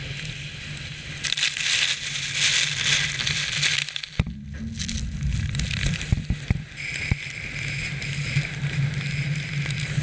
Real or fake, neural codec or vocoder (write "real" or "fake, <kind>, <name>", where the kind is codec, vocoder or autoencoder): real